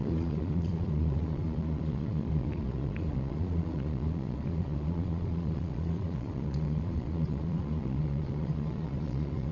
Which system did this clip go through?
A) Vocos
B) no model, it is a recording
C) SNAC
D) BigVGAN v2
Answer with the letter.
A